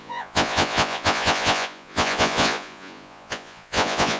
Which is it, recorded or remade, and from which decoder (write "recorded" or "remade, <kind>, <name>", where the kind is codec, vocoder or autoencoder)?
remade, vocoder, Vocos